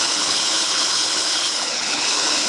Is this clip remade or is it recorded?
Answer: remade